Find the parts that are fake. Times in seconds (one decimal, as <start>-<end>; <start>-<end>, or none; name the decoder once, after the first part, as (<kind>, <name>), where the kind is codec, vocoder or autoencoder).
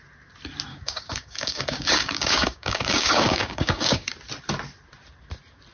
0.7-4.1 (codec, DAC)